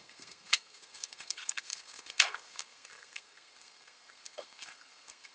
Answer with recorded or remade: remade